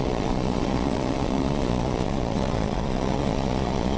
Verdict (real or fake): fake